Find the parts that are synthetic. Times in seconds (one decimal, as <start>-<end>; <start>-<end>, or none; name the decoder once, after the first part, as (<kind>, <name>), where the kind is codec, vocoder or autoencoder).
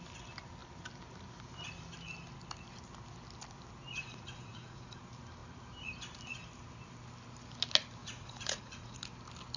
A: 4.0-5.0 (vocoder, Vocos); 8.0-9.1